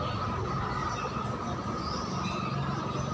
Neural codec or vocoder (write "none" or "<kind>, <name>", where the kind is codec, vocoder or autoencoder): none